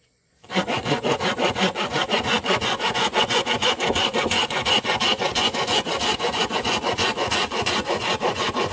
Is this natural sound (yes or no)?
no